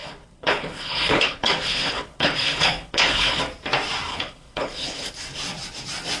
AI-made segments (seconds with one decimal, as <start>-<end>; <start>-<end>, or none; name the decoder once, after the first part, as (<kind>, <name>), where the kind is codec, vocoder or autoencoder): 0.0-3.4 (codec, HILCodec); 4.1-5.1